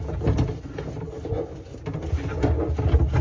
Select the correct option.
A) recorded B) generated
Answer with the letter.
A